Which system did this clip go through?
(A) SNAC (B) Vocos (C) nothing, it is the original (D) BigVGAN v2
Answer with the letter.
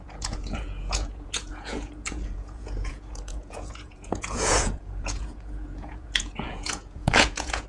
B